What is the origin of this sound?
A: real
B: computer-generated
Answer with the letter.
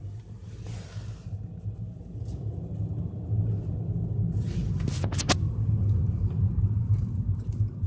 A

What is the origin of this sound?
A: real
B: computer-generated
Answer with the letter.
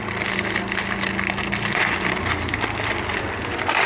A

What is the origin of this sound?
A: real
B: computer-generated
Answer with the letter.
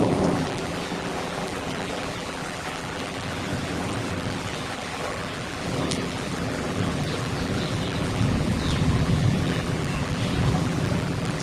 B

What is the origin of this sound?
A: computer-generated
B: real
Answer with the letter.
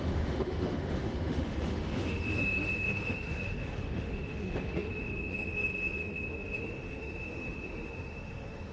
A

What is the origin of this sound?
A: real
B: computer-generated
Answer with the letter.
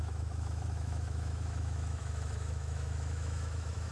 B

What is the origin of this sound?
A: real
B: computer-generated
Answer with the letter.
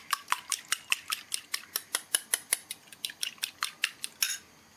A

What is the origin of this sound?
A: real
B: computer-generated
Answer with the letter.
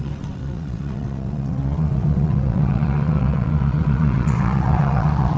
B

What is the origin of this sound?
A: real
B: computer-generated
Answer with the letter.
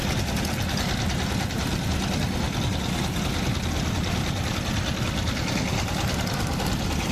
A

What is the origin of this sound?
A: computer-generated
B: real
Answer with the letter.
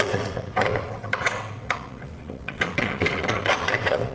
A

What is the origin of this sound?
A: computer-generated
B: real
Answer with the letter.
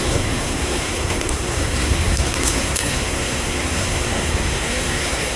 A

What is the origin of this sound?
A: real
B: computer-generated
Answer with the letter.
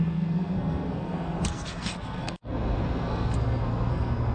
B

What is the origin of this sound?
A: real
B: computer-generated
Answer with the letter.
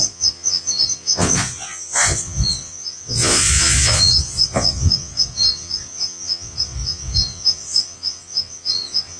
B